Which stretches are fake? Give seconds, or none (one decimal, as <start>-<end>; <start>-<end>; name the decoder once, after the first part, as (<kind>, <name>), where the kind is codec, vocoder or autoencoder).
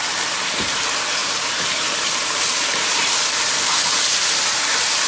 0.0-5.1 (vocoder, BigVGAN v2)